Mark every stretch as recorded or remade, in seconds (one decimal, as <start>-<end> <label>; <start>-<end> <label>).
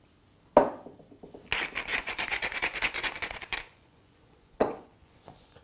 0.0-1.9 recorded; 1.9-5.6 remade